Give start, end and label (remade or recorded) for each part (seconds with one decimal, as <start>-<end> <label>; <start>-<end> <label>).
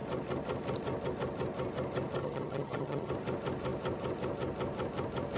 0.0-2.2 recorded; 2.2-3.1 remade; 3.1-5.4 recorded